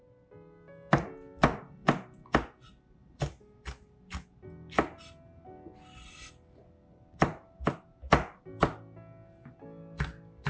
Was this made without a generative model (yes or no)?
yes